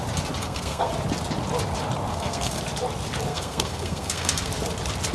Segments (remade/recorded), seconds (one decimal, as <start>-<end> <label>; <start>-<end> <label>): 0.0-0.4 recorded; 0.4-0.9 remade; 0.9-2.1 recorded; 2.1-2.6 remade; 2.6-3.3 recorded; 3.3-4.5 remade; 4.5-5.1 recorded